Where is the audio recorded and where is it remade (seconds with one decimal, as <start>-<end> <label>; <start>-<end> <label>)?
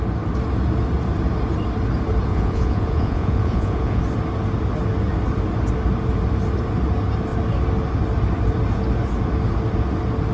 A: 0.0-2.3 recorded; 2.3-4.0 remade; 4.0-10.3 recorded